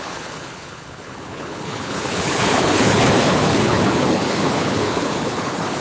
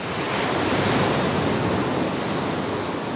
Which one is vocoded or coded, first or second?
first